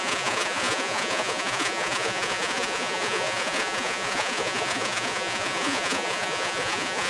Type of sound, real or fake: fake